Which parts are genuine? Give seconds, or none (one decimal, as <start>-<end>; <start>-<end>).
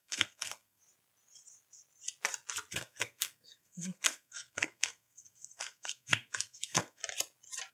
0.8-2.7; 7.0-7.7